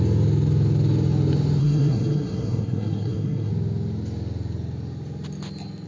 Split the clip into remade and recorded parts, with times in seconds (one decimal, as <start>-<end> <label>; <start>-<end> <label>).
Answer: 0.0-1.6 recorded; 1.6-3.5 remade; 3.5-5.9 recorded